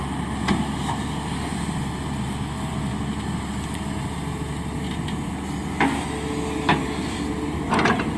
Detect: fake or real real